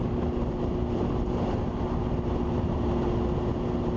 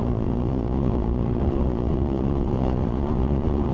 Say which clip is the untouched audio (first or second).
first